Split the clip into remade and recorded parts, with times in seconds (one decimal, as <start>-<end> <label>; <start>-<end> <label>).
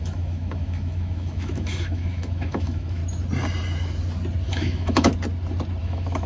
0.0-3.0 remade; 3.0-4.5 recorded; 4.5-5.1 remade; 5.1-5.8 recorded; 5.8-6.3 remade